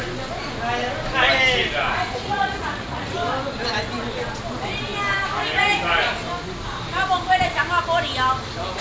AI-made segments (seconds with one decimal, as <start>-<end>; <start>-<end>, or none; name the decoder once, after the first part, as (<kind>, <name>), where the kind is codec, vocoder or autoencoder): 2.0-3.1 (vocoder, Vocos)